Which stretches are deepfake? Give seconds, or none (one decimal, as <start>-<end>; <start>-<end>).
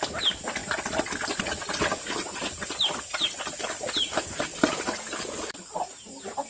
none